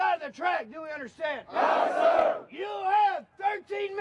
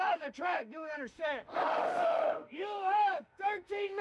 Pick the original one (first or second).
first